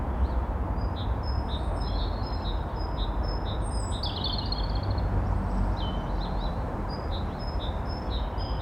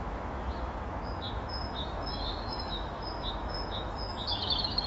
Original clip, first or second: first